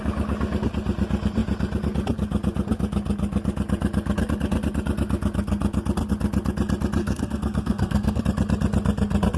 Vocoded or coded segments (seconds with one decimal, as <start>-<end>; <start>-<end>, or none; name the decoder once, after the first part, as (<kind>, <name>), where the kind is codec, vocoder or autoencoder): 7.0-8.2 (codec, SNAC)